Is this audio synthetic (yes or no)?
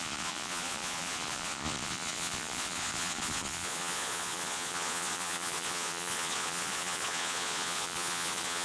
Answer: yes